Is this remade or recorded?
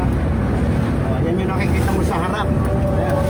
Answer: recorded